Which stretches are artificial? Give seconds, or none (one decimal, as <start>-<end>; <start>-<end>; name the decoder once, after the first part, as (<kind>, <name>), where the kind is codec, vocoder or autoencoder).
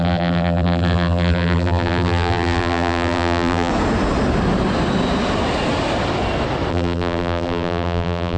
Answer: 0.0-3.7 (vocoder, BigVGAN v2); 6.7-8.4